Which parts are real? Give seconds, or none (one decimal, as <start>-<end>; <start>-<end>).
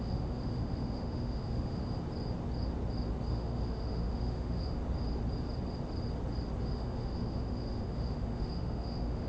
1.8-3.3; 4.8-6.6